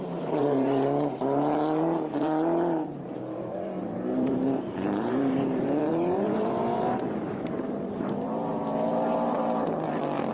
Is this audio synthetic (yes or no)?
yes